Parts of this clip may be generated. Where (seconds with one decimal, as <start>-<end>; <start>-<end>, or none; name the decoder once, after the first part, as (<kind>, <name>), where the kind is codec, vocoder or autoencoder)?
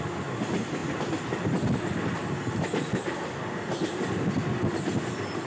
none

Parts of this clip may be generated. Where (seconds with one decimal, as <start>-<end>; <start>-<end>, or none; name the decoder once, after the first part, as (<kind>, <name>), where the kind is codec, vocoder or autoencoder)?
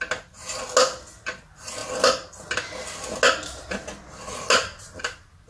none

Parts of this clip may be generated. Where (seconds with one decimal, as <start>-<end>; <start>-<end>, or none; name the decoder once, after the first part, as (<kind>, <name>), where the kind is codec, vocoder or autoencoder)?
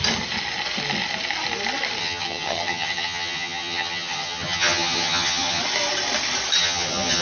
2.0-5.6 (vocoder, HiFi-GAN); 6.6-7.2